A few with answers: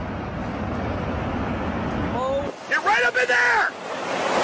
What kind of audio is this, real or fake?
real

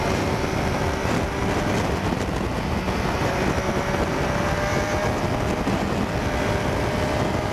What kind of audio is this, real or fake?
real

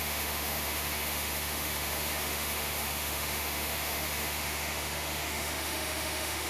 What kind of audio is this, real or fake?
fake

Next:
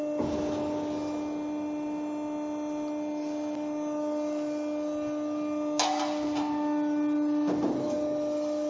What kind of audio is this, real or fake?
real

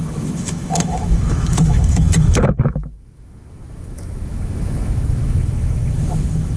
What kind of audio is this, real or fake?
fake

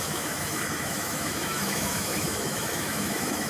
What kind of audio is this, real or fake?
fake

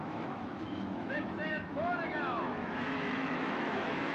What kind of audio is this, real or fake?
fake